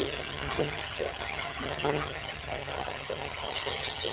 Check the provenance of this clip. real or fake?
fake